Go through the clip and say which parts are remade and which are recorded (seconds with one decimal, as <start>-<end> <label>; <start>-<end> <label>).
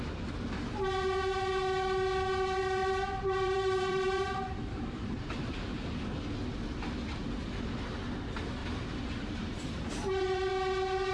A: 0.0-2.8 recorded; 2.8-5.5 remade; 5.5-8.6 recorded; 8.6-10.5 remade; 10.5-11.1 recorded